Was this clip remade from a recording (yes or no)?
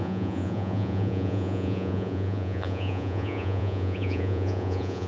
yes